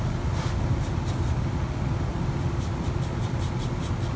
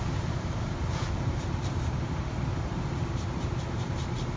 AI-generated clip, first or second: second